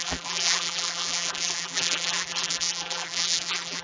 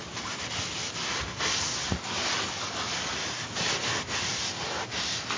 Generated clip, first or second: first